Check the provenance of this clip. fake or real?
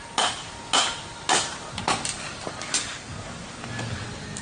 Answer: real